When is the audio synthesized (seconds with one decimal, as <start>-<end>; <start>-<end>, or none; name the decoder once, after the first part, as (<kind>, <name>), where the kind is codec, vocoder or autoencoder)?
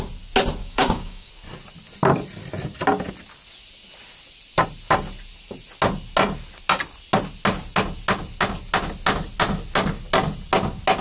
0.6-1.3 (codec, DAC)